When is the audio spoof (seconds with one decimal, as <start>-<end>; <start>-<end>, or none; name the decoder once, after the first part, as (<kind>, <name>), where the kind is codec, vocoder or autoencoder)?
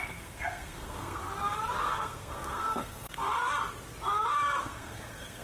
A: 0.0-1.2 (codec, SNAC); 1.8-3.5; 4.6-5.4